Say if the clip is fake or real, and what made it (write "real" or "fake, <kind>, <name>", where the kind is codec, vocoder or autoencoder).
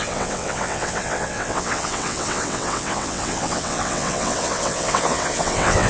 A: fake, vocoder, WaveNeXt